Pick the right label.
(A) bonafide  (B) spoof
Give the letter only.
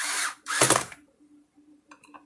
B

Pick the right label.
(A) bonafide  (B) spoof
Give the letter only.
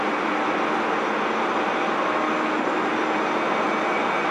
A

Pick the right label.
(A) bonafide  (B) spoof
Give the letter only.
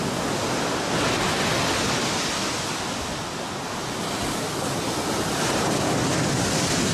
A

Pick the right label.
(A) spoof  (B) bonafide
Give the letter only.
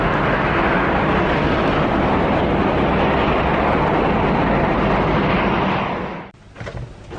B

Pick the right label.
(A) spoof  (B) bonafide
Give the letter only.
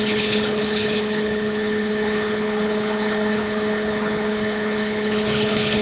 A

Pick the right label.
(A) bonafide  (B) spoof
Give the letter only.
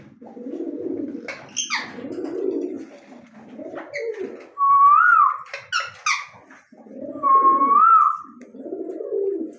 A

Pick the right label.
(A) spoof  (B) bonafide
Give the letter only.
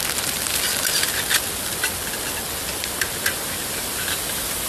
B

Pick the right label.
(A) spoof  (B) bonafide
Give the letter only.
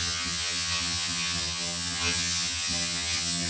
A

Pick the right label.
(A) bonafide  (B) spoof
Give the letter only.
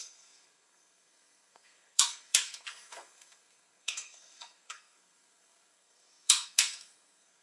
B